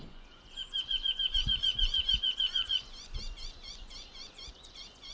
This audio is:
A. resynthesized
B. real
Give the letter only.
A